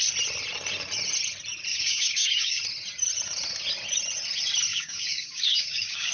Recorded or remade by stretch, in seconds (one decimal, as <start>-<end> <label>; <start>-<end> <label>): 0.0-1.7 recorded; 1.7-2.6 remade; 2.6-4.7 recorded; 4.7-6.1 remade